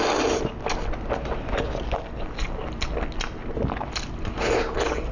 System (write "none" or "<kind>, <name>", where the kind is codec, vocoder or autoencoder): none